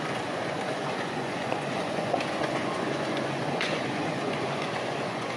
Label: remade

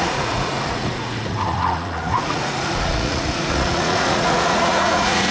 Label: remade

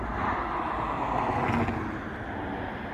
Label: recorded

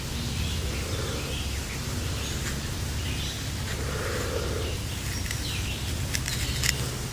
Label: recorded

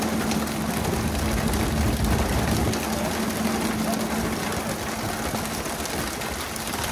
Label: recorded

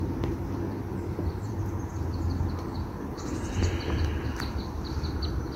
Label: recorded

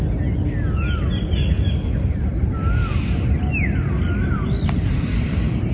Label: recorded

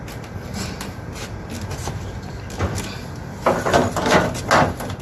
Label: recorded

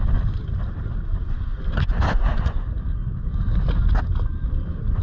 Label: recorded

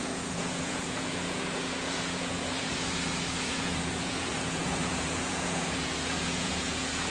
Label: remade